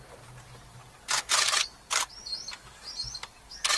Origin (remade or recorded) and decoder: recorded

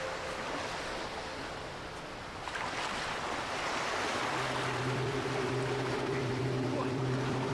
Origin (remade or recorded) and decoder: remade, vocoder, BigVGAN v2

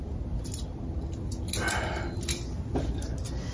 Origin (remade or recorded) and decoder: recorded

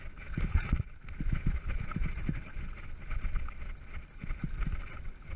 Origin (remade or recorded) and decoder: recorded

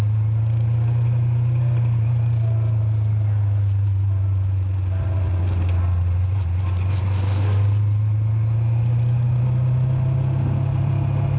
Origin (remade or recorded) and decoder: recorded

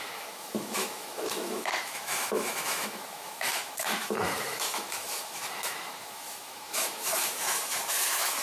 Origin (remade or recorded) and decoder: remade, autoencoder, DAC-VAE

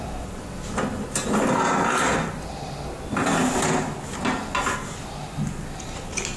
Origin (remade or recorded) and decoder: recorded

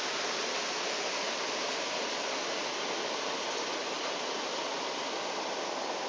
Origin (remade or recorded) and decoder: recorded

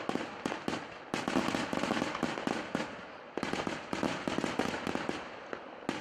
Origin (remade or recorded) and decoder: recorded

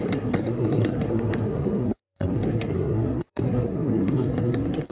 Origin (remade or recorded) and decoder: remade, codec, SNAC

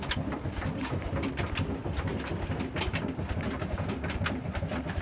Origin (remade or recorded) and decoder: recorded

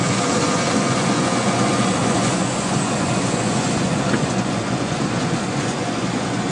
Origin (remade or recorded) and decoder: remade, vocoder, Vocos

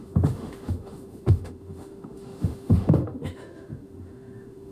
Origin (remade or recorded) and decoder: remade, autoencoder, DAC-VAE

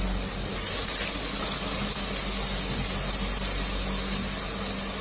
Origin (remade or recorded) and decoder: recorded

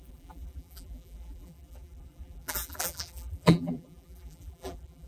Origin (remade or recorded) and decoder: remade, vocoder, BigVGAN v2